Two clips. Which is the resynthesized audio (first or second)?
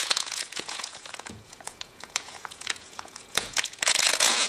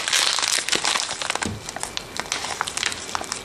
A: first